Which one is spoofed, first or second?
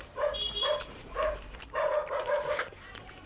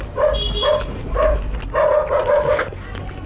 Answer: first